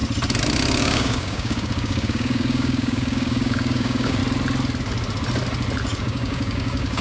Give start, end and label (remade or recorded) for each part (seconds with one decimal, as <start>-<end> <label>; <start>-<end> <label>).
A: 0.0-0.8 recorded; 0.8-4.2 remade; 4.2-6.0 recorded; 6.0-7.0 remade